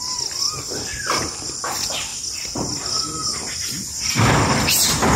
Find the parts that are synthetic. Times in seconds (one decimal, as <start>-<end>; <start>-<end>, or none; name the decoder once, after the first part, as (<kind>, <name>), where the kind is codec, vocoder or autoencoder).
none